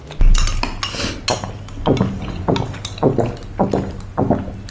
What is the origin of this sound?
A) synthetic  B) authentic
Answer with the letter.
B